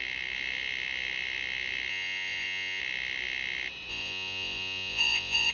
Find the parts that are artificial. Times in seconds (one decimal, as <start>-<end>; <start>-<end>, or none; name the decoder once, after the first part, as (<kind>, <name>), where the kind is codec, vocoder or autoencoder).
1.9-2.8 (vocoder, Vocos); 3.9-5.5